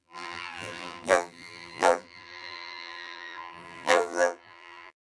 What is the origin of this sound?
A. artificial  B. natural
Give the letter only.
A